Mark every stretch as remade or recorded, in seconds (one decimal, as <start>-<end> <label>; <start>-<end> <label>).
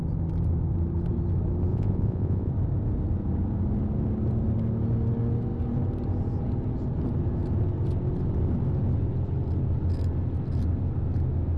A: 0.0-1.7 recorded; 1.7-2.5 remade; 2.5-11.6 recorded